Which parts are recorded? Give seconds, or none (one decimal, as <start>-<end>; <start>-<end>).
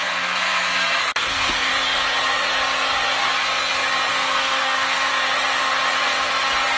1.7-4.1; 5.1-6.8